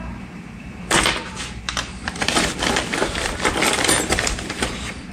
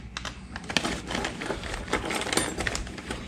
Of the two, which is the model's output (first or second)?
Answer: first